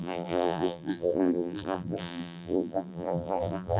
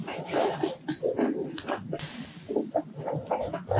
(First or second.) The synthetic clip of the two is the first